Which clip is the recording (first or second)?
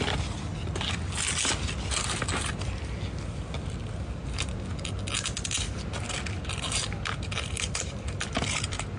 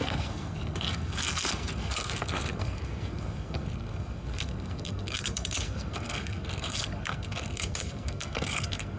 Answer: first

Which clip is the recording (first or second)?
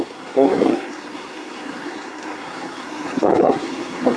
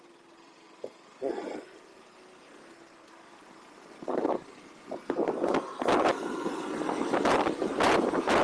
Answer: second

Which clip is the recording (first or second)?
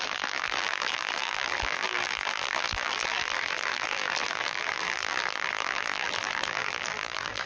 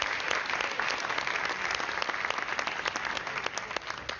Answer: second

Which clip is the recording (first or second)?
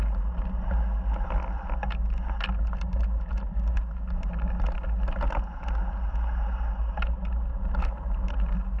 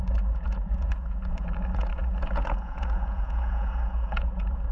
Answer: first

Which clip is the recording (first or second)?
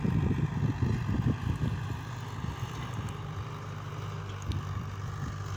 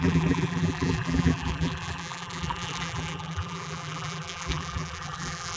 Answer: first